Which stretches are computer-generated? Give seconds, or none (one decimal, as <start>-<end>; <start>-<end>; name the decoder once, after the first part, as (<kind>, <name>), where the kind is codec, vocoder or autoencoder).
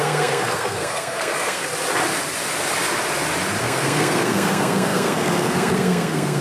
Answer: 0.0-1.6 (codec, SNAC); 3.6-6.4